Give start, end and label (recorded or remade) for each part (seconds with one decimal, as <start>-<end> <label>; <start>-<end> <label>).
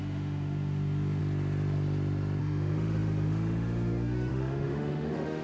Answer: 0.0-1.2 remade; 1.2-2.4 recorded; 2.4-5.4 remade